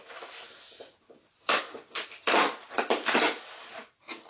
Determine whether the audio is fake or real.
fake